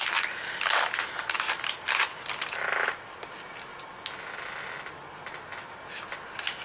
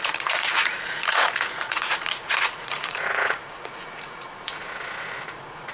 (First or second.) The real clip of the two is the first